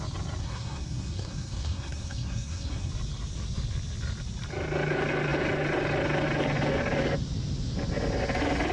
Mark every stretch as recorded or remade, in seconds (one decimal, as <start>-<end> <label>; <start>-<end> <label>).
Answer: 0.0-0.4 recorded; 0.4-2.9 remade; 2.9-8.7 recorded